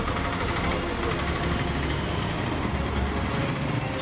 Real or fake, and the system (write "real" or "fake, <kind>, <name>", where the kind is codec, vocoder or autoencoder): real